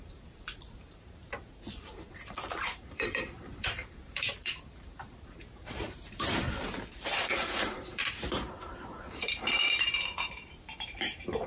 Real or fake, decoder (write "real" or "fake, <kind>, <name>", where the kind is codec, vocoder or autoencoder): fake, vocoder, BigVGAN v2